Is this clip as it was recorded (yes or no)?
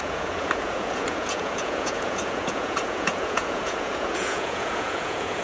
no